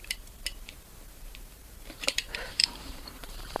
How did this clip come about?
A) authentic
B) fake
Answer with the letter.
B